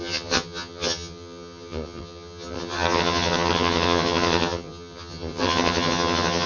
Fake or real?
fake